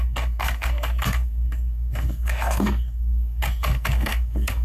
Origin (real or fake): fake